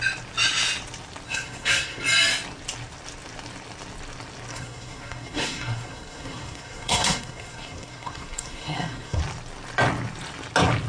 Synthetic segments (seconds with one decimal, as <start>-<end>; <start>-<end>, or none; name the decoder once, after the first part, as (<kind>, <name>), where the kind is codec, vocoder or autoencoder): 1.3-2.0 (codec, SNAC); 4.5-9.2